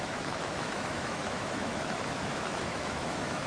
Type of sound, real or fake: fake